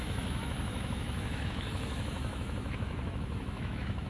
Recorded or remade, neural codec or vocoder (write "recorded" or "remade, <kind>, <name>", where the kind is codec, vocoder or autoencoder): remade, autoencoder, DAC-VAE